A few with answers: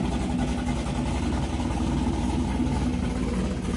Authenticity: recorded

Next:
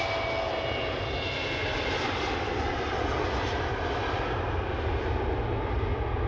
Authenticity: recorded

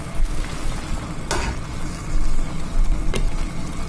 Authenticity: recorded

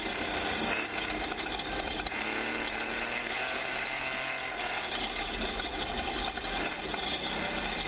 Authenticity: recorded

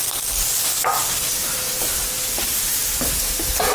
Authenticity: recorded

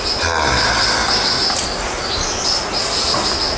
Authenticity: recorded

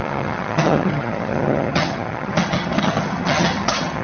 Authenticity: remade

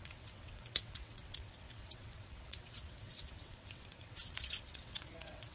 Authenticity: remade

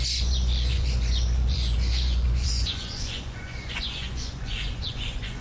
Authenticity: remade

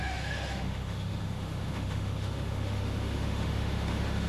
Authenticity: remade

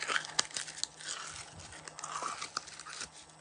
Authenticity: recorded